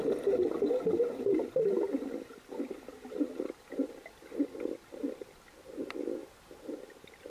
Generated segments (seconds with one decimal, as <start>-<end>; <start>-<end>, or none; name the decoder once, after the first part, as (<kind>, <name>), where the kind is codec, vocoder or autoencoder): 6.2-6.7 (vocoder, BigVGAN v2)